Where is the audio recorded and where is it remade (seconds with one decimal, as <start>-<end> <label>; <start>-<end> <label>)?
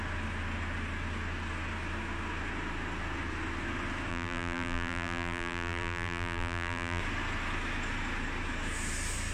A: 0.0-4.1 recorded; 4.1-7.0 remade; 7.0-9.3 recorded